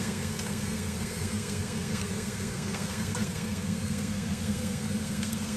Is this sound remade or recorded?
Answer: remade